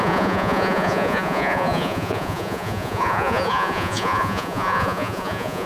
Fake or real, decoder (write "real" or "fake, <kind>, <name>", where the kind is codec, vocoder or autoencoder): fake, vocoder, Vocos